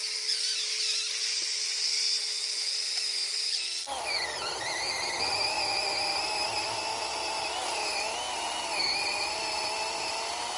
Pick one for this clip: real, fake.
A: real